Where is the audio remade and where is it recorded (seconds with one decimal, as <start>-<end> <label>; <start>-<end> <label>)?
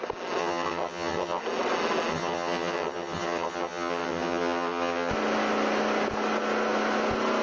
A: 0.0-0.4 recorded; 0.4-1.4 remade; 1.4-2.1 recorded; 2.1-5.1 remade; 5.1-7.4 recorded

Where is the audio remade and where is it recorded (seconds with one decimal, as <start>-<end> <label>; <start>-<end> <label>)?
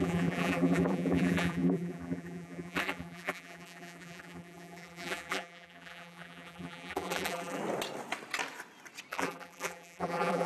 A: 0.0-7.6 remade; 7.6-9.1 recorded; 9.1-10.5 remade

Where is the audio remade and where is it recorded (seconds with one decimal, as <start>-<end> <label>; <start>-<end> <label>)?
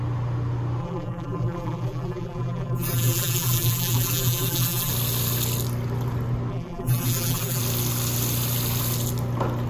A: 0.0-0.8 recorded; 0.8-4.9 remade; 4.9-6.5 recorded; 6.5-7.6 remade; 7.6-9.7 recorded